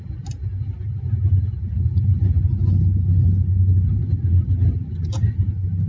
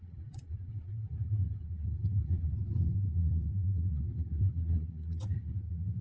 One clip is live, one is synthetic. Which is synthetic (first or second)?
second